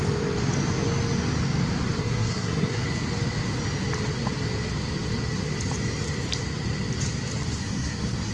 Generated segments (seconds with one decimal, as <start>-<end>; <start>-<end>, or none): 2.0-2.8; 7.6-8.3